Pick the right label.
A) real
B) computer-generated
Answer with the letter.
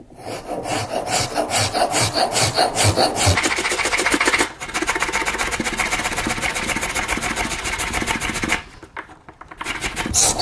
A